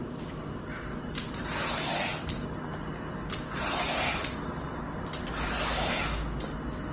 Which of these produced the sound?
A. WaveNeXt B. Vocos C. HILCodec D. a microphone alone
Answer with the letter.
D